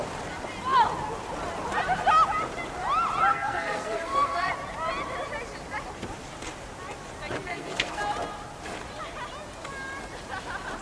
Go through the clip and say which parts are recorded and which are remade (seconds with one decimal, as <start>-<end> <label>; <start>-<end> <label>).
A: 0.0-3.3 recorded; 3.3-4.5 remade; 4.5-7.4 recorded; 7.4-8.0 remade; 8.0-10.8 recorded